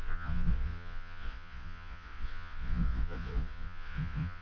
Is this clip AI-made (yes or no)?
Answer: yes